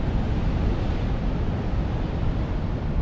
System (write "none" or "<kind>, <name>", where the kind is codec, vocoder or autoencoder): none